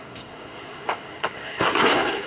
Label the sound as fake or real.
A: fake